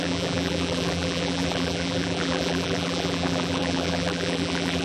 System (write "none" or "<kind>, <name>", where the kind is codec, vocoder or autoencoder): vocoder, BigVGAN v2